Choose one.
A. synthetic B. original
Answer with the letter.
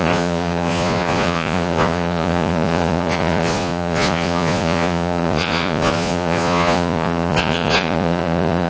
A